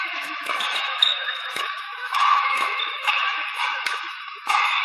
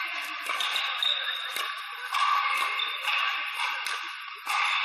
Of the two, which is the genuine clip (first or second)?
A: second